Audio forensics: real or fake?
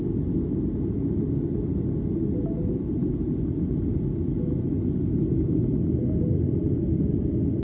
real